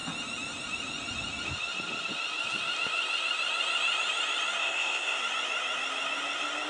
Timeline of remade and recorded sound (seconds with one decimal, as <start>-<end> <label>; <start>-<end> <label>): 0.0-4.6 recorded; 4.6-5.2 remade; 5.2-6.7 recorded